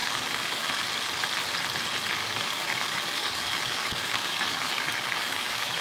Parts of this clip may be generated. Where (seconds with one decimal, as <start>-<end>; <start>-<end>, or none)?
0.0-0.8; 2.2-5.8